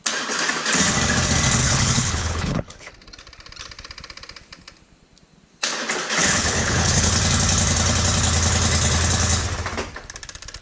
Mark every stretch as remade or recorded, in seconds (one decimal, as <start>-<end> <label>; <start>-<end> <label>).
0.0-1.6 recorded; 1.6-2.9 remade; 2.9-6.2 recorded; 6.2-7.1 remade; 7.1-10.6 recorded